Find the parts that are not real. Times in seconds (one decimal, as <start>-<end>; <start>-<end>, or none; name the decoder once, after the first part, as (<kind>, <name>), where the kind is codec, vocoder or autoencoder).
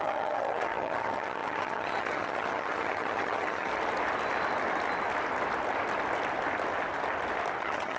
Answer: 0.0-3.7 (vocoder, HiFi-GAN); 7.6-8.0